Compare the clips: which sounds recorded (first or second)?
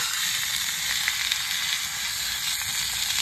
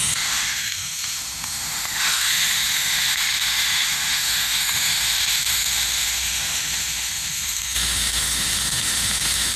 first